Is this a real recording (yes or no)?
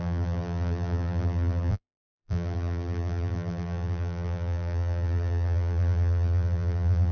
no